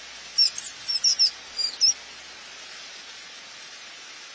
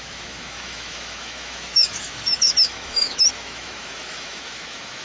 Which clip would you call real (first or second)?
first